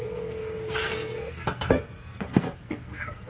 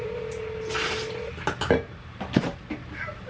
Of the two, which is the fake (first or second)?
first